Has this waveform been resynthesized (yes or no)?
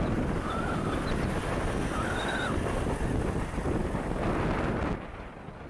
no